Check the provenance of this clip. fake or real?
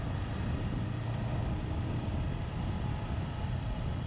real